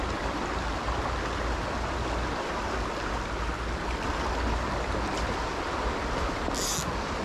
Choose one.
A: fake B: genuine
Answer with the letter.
B